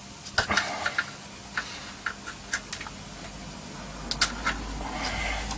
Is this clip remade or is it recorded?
recorded